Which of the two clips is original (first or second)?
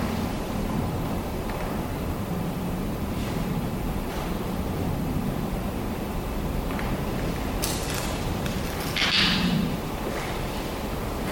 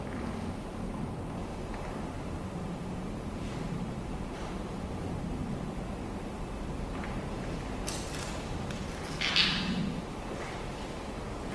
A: second